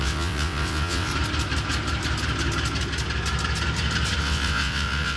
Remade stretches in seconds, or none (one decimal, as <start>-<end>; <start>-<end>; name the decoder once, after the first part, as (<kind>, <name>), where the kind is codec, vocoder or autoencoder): 0.0-1.1 (vocoder, WaveNeXt); 4.2-5.2